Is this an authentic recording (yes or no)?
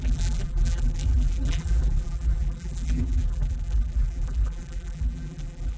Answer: no